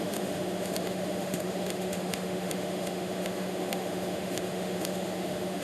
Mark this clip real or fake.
fake